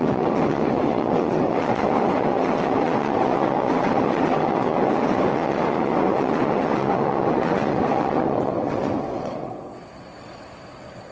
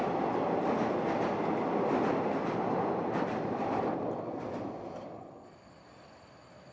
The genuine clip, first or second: second